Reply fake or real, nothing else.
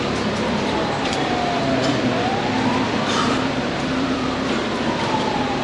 fake